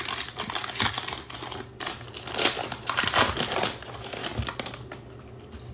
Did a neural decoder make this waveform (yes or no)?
no